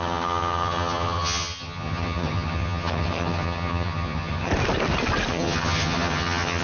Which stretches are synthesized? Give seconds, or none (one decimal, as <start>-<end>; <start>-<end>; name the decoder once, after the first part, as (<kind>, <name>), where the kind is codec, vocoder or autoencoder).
0.0-4.5 (vocoder, HiFi-GAN); 5.3-6.6